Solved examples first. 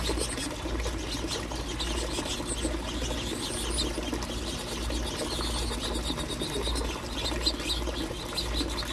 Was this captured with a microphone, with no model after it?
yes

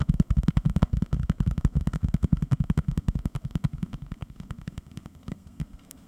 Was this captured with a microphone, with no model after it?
no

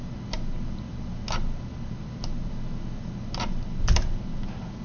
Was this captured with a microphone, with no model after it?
yes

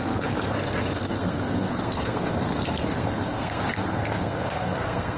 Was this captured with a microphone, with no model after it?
no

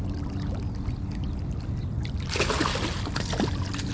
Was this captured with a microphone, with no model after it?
yes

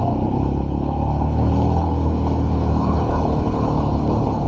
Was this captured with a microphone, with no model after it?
no